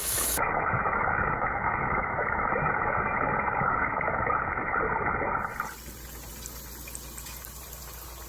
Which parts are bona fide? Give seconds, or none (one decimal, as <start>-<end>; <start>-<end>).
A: 4.8-8.3